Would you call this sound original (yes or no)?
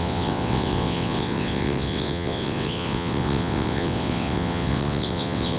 no